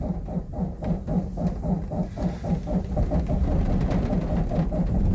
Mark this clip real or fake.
real